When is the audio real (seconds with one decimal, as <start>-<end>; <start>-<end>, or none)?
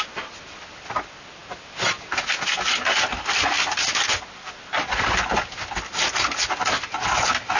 0.0-7.6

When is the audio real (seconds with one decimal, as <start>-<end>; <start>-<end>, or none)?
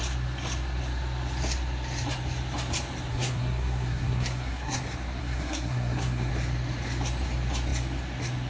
0.0-3.1; 4.8-5.2; 6.3-8.5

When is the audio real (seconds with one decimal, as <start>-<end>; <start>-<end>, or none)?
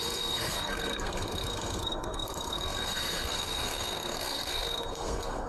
none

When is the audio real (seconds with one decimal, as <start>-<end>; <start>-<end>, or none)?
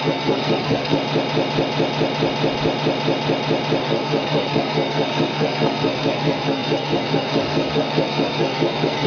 1.0-3.8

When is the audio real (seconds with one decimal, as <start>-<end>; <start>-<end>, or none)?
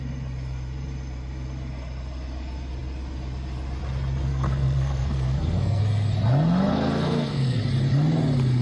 0.0-4.3; 5.8-6.7; 7.6-8.6